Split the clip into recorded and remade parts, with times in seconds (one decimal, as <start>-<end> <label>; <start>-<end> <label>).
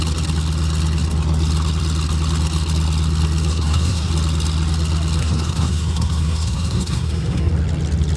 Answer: 0.0-3.5 recorded; 3.5-4.1 remade; 4.1-5.2 recorded; 5.2-7.5 remade; 7.5-8.2 recorded